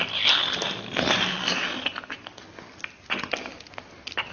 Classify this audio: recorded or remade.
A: recorded